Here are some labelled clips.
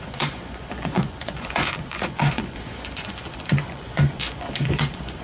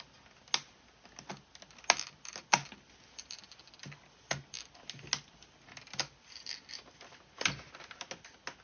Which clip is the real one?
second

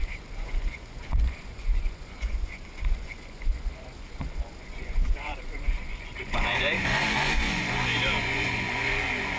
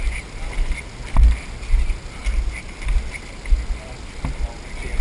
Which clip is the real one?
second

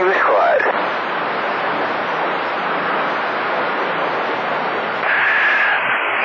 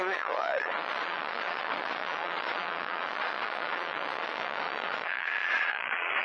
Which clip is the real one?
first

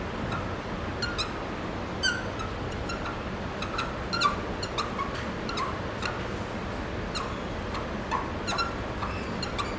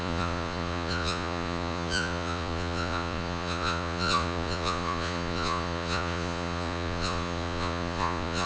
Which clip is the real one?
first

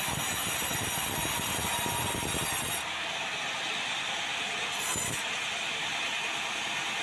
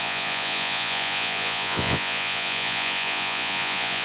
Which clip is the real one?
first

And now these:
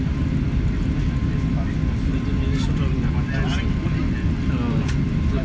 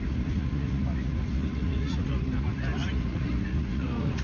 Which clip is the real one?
first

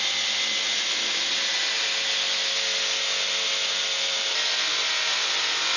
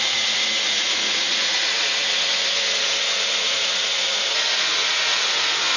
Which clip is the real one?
first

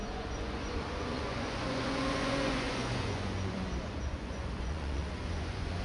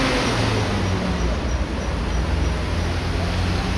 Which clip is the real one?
second